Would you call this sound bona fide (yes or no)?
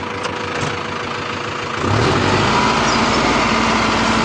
yes